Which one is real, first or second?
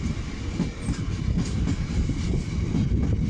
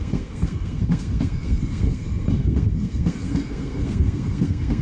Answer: first